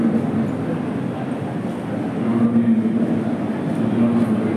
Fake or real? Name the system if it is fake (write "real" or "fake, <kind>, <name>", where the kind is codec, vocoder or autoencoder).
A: real